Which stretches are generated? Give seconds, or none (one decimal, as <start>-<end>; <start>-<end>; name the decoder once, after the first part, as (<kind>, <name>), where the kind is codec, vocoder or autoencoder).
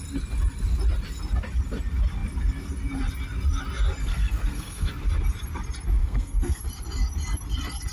4.0-4.9 (codec, SNAC); 6.0-6.6